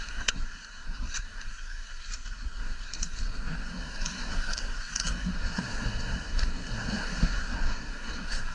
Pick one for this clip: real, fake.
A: fake